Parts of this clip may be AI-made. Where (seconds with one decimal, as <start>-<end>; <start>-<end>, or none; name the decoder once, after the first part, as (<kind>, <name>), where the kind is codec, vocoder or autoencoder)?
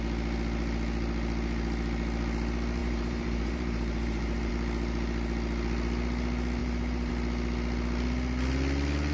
2.8-4.5 (vocoder, BigVGAN v2); 6.6-7.1